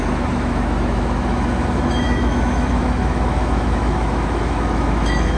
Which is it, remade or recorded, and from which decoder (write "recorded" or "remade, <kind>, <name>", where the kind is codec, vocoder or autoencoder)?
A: remade, autoencoder, DAC-VAE